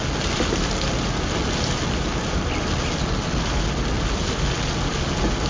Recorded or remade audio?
recorded